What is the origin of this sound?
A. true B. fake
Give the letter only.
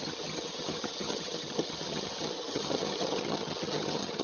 B